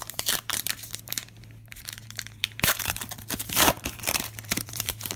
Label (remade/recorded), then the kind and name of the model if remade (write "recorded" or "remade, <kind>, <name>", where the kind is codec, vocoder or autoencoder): remade, vocoder, BigVGAN v2